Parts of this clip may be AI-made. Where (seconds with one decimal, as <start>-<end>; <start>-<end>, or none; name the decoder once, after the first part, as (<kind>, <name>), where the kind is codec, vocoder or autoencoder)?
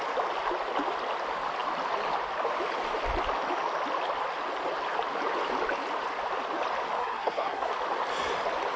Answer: 7.0-7.7 (codec, SNAC)